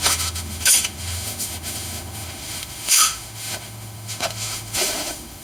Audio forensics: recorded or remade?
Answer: remade